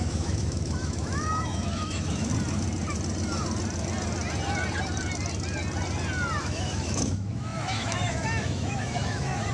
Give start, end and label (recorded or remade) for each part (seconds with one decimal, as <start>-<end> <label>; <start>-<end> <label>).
0.0-2.3 remade; 2.3-6.4 recorded; 6.4-9.5 remade